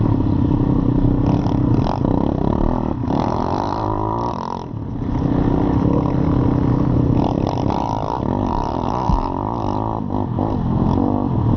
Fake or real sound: real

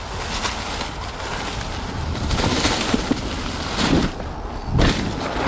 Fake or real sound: real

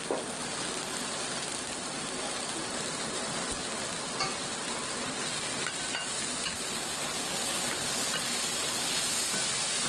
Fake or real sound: real